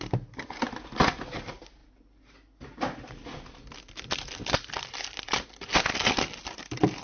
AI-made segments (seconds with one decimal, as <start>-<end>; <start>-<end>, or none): none